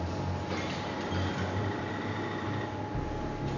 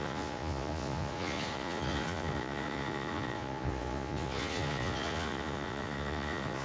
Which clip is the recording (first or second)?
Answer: first